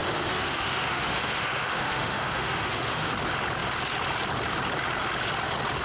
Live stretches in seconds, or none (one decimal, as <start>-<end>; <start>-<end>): 3.1-5.8